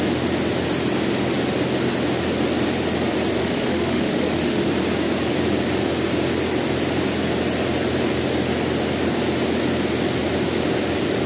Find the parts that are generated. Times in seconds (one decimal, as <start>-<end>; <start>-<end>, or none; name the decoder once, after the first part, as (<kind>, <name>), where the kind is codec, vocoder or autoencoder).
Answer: 3.4-4.7 (autoencoder, DAC-VAE)